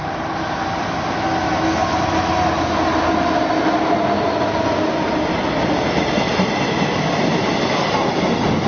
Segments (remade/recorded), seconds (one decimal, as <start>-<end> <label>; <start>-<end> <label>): 0.0-8.7 recorded